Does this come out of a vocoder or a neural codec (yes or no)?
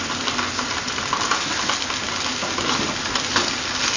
no